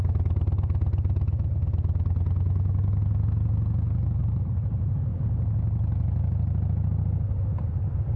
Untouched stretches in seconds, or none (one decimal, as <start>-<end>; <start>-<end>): 0.0-4.2; 5.0-8.2